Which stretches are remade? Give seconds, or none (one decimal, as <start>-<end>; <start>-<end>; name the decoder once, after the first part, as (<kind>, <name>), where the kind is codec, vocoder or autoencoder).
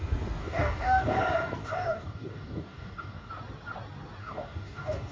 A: 0.4-1.2 (codec, DAC); 1.6-3.3; 4.2-5.1